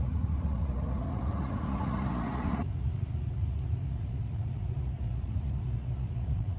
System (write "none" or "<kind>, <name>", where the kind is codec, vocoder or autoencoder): vocoder, Vocos